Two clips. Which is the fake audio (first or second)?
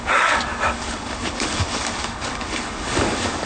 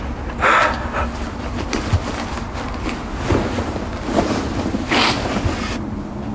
first